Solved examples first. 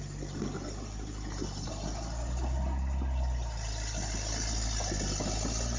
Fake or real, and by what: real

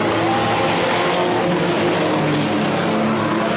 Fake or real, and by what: real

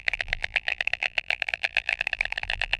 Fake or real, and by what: fake, vocoder, BigVGAN v2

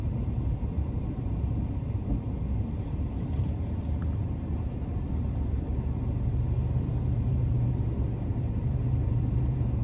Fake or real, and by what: fake, vocoder, BigVGAN v2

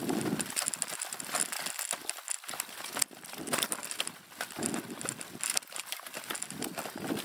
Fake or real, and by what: real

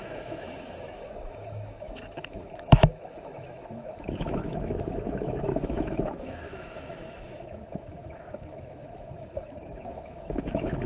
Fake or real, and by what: fake, autoencoder, DAC-VAE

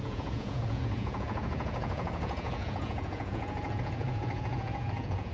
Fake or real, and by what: fake, vocoder, Vocos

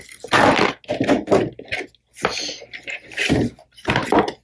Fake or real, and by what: real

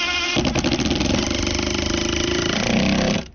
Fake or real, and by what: real